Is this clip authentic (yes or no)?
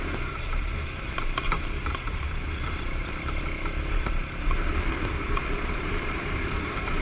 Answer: no